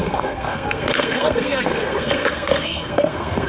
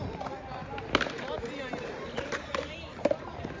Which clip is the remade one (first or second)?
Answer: first